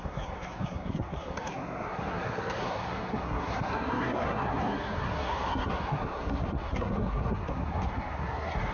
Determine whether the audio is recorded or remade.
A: remade